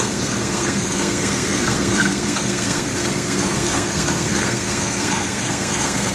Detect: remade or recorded remade